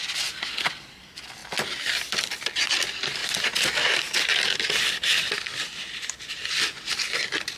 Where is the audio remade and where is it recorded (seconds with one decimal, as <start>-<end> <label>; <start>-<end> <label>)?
0.0-7.6 recorded

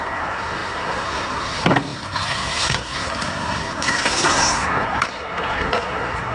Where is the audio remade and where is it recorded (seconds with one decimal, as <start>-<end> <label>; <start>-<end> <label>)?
0.0-6.3 remade

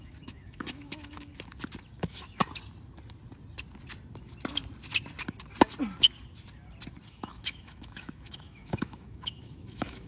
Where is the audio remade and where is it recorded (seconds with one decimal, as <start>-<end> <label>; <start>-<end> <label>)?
0.0-1.3 remade; 1.3-2.0 recorded; 2.0-2.4 remade; 2.4-7.1 recorded; 7.1-10.1 remade

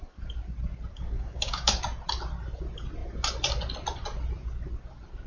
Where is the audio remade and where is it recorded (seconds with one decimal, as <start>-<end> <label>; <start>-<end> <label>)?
0.0-0.9 recorded; 0.9-1.8 remade; 1.8-5.3 recorded

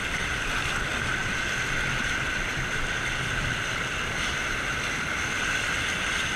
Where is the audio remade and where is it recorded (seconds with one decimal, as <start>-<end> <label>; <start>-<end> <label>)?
0.0-6.4 recorded

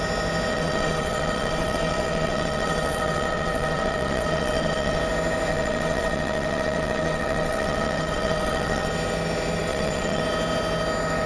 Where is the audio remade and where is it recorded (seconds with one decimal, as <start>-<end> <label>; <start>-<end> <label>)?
0.0-0.5 recorded; 0.5-5.0 remade; 5.0-5.5 recorded; 5.5-8.9 remade; 8.9-9.7 recorded; 9.7-10.2 remade; 10.2-11.3 recorded

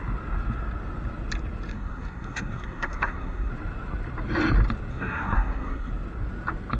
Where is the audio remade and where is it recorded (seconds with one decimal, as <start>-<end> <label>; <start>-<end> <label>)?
0.0-1.7 recorded; 1.7-3.5 remade; 3.5-4.9 recorded; 4.9-5.9 remade; 5.9-6.8 recorded